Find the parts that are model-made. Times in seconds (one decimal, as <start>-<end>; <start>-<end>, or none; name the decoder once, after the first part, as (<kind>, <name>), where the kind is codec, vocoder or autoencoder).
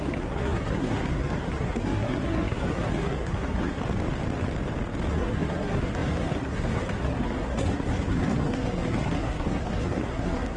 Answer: 0.0-3.8 (codec, SNAC); 5.1-10.6